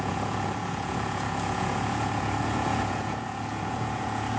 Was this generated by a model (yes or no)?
yes